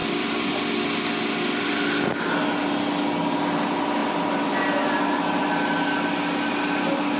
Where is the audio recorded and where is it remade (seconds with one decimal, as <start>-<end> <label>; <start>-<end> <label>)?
0.0-0.5 remade; 0.5-7.2 recorded